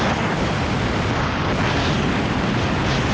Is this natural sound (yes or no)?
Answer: yes